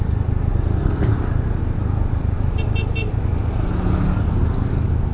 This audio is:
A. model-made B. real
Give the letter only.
B